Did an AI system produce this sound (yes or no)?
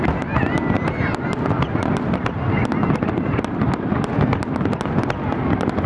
no